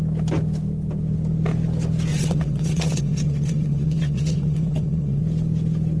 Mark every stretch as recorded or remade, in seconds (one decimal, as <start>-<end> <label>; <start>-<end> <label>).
0.0-2.1 recorded; 2.1-5.2 remade; 5.2-6.0 recorded